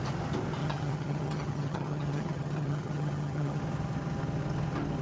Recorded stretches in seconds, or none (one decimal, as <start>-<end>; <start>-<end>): 0.0-0.6; 3.6-5.0